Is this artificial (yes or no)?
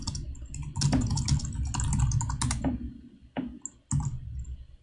no